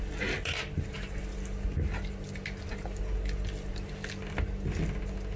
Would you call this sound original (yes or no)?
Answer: yes